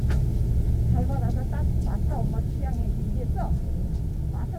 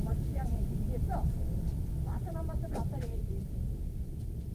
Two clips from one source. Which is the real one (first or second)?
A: first